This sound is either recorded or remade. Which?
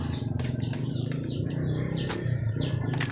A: remade